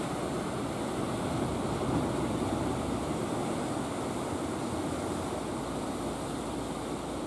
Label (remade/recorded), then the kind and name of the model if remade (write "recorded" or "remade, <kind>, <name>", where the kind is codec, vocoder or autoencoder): recorded